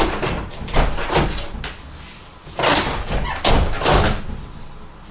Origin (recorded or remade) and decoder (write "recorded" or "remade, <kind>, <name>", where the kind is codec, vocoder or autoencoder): recorded